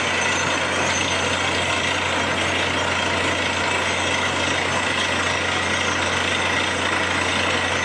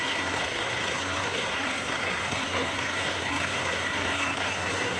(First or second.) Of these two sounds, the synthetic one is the second